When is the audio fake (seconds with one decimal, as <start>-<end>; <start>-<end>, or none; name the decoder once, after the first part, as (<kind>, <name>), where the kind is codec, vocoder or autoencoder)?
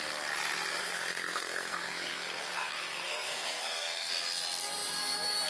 0.8-4.1 (codec, SNAC)